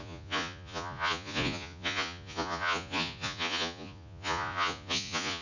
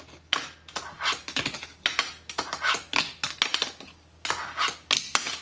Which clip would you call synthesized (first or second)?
first